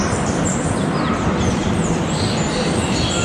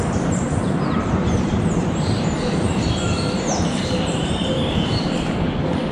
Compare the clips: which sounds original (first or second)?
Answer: first